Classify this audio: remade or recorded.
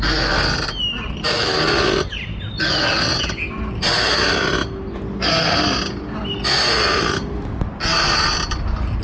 recorded